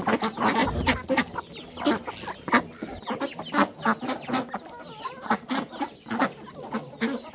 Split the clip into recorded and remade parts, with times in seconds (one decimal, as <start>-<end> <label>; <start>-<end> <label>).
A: 0.0-7.3 recorded